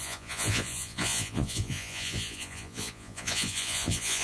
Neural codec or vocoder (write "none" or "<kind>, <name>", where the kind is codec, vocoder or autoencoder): vocoder, Vocos